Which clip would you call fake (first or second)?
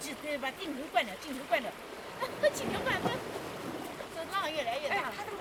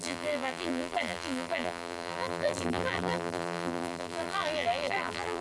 second